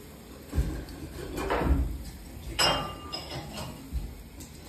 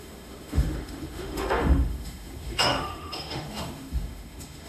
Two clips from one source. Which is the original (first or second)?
first